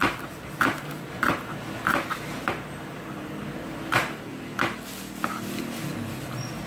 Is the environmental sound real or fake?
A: real